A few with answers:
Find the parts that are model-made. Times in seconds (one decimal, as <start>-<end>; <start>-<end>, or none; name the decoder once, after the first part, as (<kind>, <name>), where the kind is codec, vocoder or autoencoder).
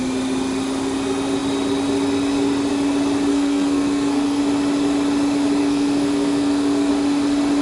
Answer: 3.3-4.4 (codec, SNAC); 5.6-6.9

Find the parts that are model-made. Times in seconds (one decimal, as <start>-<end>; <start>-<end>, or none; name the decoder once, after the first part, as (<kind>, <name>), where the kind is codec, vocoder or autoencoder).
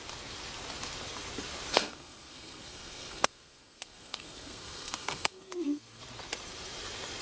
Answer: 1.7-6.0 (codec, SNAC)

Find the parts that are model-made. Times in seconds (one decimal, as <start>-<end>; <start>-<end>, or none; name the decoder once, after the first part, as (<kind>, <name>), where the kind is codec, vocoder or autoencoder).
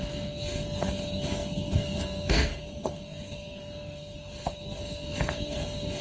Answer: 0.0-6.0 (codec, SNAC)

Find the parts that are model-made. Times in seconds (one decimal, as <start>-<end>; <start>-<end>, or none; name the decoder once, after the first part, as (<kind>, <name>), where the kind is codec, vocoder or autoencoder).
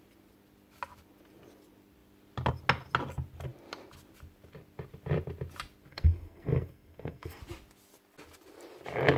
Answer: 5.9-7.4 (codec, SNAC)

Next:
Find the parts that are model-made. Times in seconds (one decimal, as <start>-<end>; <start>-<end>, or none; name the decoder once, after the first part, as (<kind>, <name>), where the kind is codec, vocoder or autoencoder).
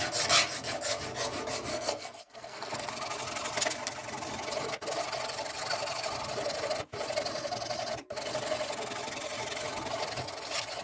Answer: 1.7-2.9 (codec, SNAC)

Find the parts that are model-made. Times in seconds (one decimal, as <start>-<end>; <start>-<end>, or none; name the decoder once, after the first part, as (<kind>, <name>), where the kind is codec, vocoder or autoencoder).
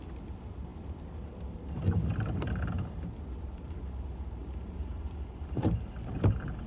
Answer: none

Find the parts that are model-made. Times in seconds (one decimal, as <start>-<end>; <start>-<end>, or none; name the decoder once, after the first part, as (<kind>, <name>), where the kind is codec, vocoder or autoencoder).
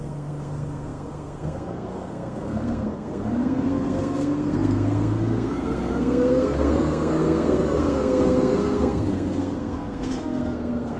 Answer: 0.0-11.0 (codec, SNAC)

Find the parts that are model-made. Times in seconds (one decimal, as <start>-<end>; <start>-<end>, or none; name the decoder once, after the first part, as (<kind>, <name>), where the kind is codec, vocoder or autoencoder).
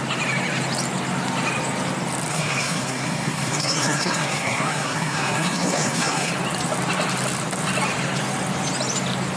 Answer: 2.3-6.3 (codec, SNAC)